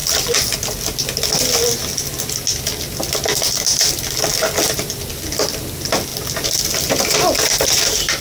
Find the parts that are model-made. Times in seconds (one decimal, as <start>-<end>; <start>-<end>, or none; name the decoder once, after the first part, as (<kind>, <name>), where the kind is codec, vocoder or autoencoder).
none